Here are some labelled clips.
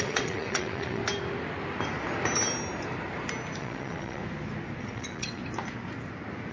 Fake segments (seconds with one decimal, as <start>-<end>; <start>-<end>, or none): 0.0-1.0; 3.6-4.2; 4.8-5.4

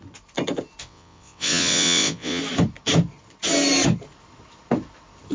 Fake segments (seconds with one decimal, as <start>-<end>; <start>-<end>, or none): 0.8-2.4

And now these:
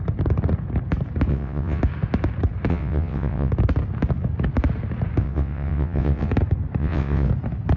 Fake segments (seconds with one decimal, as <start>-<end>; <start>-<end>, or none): 1.3-1.8; 2.7-3.5; 5.2-6.3; 6.8-7.3

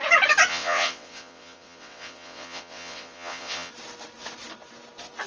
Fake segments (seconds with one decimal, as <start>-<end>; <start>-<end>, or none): 0.5-3.7